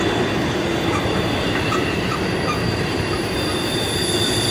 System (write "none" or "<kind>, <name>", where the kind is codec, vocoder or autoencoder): none